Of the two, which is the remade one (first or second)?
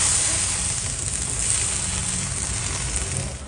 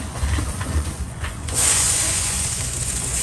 second